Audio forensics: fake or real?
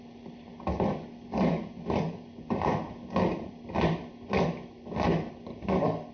real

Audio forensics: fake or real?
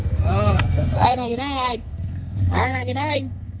fake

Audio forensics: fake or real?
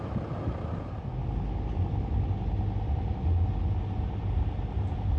real